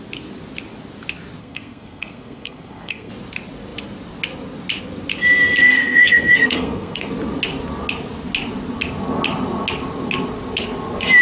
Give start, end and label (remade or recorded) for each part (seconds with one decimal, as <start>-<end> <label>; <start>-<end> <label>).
0.0-1.4 recorded; 1.4-3.1 remade; 3.1-5.6 recorded; 5.6-7.1 remade; 7.1-11.2 recorded